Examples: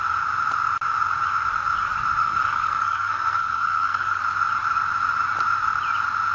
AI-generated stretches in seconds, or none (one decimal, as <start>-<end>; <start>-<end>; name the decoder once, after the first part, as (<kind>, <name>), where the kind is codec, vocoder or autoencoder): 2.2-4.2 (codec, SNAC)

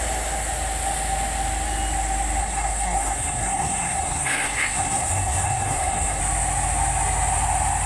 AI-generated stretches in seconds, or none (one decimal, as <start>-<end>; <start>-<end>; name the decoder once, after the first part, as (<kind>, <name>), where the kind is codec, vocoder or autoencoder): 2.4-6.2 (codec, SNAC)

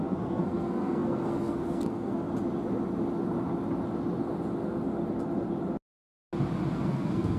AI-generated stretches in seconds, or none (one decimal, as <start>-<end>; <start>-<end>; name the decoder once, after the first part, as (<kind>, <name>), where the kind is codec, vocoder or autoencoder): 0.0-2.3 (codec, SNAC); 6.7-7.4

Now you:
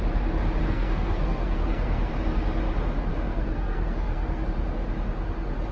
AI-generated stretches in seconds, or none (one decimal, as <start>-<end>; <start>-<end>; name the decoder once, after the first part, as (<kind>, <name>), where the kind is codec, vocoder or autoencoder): 0.6-2.1 (codec, SNAC); 3.1-4.4

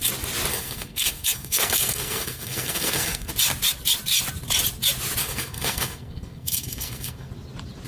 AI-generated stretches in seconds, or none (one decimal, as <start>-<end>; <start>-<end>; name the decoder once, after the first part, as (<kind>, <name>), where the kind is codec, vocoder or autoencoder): 0.5-3.3 (codec, SNAC); 5.2-7.3